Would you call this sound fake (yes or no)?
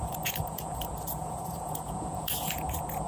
yes